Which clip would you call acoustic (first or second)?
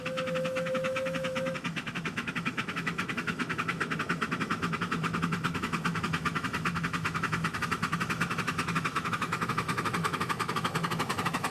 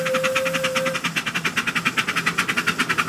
second